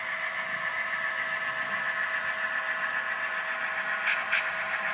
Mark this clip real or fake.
real